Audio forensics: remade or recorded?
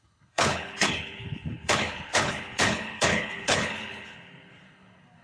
remade